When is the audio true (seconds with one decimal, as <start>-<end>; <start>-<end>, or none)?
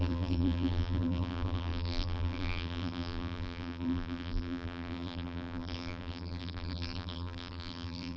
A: none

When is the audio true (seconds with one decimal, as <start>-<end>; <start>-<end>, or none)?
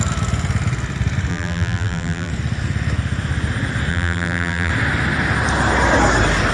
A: 0.0-1.3; 2.3-3.9; 4.7-6.5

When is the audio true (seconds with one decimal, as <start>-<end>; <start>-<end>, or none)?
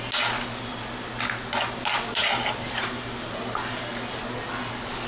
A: 0.0-2.2; 3.3-5.1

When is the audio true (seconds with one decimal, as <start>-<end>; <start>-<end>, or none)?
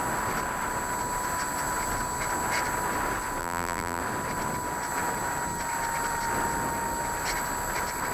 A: 0.0-3.4; 4.0-8.1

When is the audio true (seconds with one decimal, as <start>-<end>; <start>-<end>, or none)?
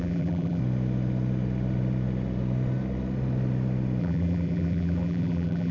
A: 0.6-4.0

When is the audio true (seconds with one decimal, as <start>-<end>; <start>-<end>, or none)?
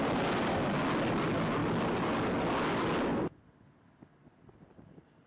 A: 0.0-5.3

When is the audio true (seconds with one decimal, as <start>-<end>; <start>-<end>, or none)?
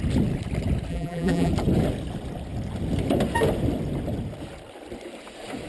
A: 0.0-0.9; 1.5-5.7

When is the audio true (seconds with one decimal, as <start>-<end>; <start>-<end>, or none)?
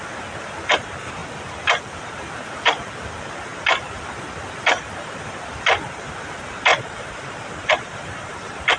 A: 0.0-6.7